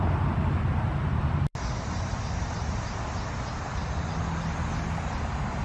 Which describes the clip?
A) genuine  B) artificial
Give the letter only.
A